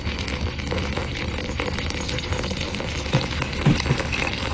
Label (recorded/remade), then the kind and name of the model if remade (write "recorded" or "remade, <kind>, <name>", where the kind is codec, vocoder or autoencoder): recorded